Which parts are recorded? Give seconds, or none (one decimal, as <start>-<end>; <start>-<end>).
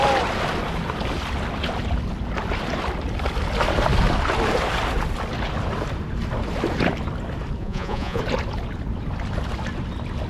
0.0-7.6; 8.2-10.3